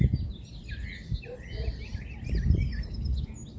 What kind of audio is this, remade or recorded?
recorded